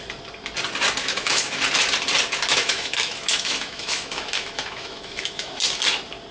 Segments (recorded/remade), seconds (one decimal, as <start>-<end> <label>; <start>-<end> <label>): 0.0-1.0 recorded; 1.0-1.6 remade; 1.6-2.6 recorded; 2.6-5.8 remade; 5.8-6.3 recorded